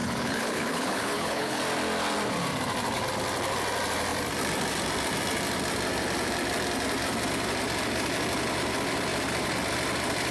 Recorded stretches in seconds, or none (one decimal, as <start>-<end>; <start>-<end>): 1.6-10.3